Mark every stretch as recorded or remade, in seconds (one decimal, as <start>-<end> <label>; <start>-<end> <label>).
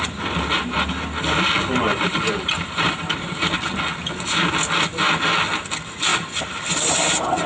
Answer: 0.0-1.9 recorded; 1.9-3.5 remade; 3.5-6.1 recorded; 6.1-6.9 remade; 6.9-7.5 recorded